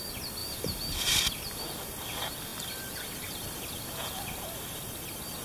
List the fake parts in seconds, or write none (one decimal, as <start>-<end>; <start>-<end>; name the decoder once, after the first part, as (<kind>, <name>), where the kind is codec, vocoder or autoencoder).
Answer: 0.4-1.2 (vocoder, BigVGAN v2); 2.5-3.1